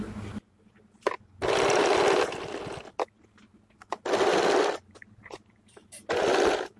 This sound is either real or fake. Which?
real